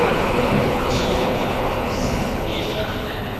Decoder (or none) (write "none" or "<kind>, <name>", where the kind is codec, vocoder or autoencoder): codec, HILCodec